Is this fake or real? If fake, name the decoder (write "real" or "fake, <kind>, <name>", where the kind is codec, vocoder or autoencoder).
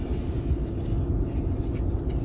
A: real